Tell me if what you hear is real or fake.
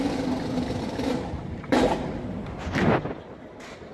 real